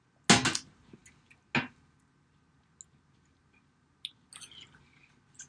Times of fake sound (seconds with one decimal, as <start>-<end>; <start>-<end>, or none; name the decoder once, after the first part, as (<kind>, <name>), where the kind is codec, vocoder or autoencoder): none